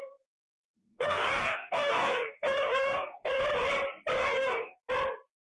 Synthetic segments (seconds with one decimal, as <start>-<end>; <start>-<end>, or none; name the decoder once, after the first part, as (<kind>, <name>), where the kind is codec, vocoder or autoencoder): 0.7-3.4 (codec, DAC); 4.2-4.9